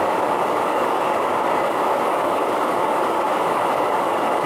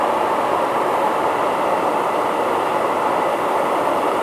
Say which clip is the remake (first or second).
first